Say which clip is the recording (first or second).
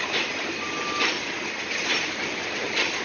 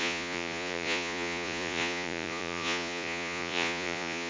first